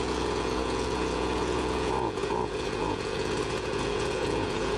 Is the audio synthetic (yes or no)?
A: yes